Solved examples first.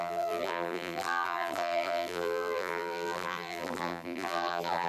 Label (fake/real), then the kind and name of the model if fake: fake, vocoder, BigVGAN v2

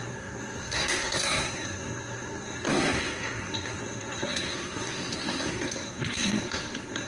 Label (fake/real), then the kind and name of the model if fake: fake, codec, SNAC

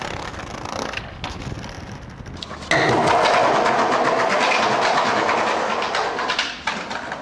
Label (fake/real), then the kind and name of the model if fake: real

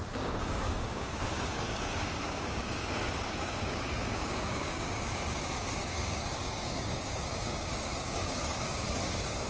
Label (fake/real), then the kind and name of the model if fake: fake, codec, DAC